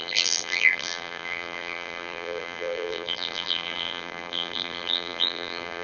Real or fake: fake